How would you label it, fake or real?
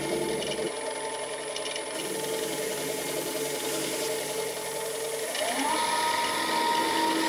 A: real